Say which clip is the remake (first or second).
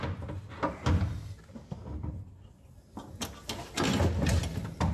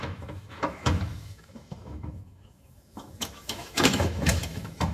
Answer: second